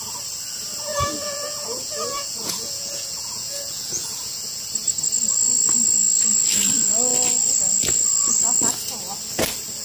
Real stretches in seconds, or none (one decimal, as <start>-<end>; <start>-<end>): 0.0-0.9; 4.6-9.8